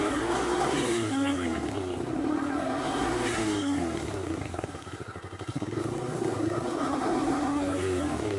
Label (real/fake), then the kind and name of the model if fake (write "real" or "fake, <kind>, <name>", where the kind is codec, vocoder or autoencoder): fake, codec, SNAC